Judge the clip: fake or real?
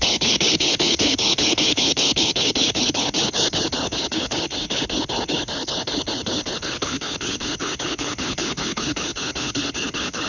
fake